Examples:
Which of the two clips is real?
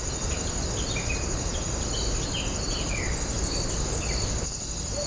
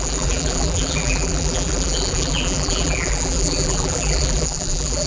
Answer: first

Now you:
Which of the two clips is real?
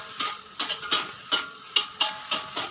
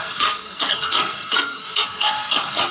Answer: first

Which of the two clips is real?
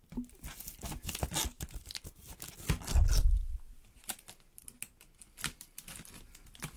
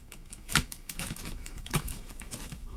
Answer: first